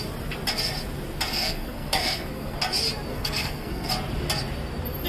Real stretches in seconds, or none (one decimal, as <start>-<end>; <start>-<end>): 0.0-1.3; 2.6-3.1; 3.9-5.1